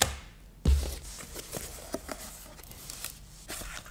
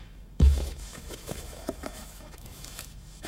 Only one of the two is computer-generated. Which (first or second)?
second